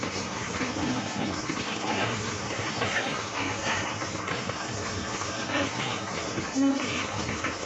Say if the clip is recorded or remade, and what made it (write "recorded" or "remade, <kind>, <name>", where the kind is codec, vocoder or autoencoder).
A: remade, codec, SNAC